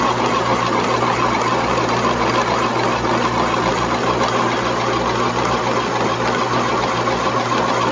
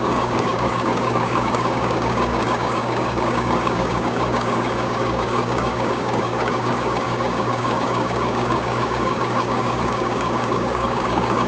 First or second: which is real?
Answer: first